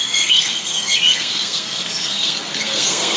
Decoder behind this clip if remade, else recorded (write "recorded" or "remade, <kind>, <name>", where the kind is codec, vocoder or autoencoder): remade, codec, SNAC